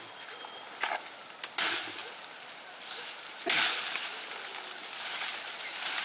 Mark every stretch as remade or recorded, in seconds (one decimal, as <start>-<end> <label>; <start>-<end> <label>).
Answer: 0.0-6.0 recorded